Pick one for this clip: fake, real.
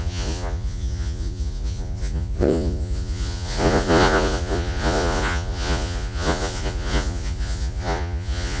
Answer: fake